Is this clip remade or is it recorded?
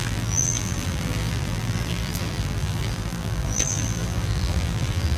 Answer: remade